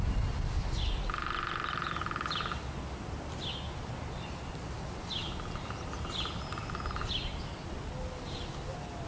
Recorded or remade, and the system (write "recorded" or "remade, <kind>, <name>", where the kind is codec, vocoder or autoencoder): recorded